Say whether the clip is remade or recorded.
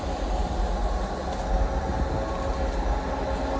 recorded